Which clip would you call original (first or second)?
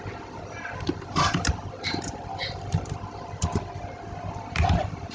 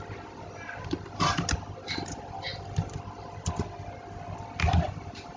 second